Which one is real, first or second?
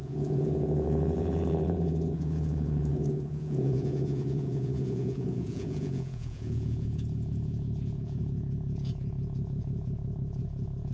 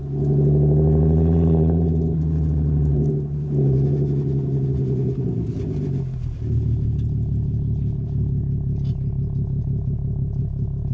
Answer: second